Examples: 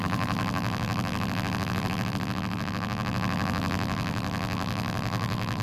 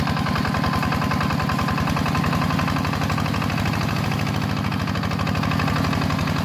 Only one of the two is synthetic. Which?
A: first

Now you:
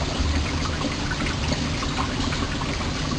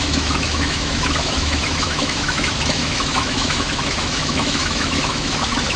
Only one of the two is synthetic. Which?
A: second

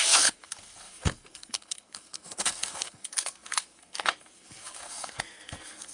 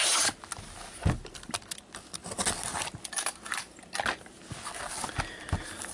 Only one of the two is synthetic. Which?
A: first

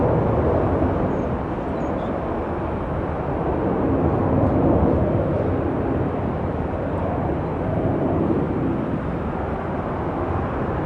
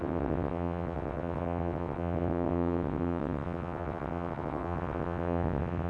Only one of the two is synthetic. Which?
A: second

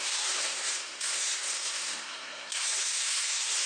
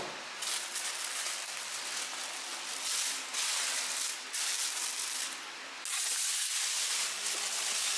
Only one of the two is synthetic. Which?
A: first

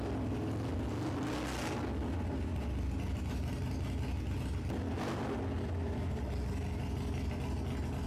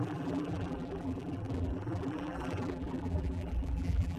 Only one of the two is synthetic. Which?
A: second